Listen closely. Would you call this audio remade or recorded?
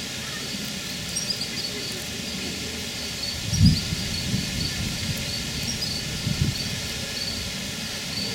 recorded